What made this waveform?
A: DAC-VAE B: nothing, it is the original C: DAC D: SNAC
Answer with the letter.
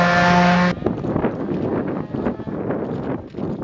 B